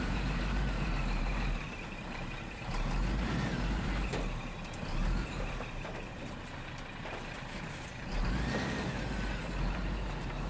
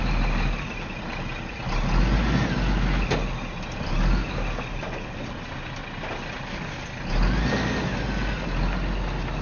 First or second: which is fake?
first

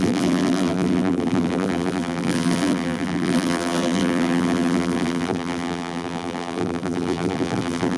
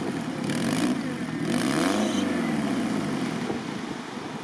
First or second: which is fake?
first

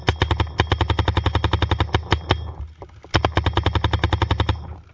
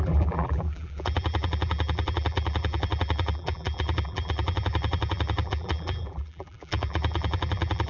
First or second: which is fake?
second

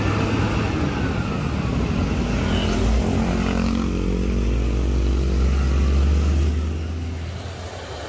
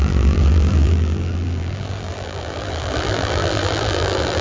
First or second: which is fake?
second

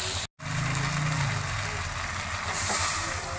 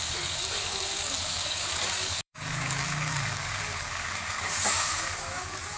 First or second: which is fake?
second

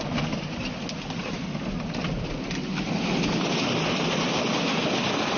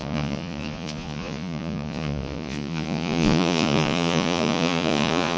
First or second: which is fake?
second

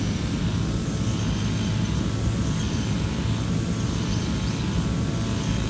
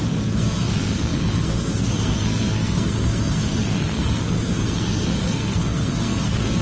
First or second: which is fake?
second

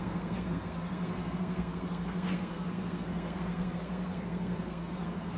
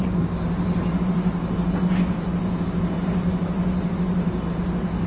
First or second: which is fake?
first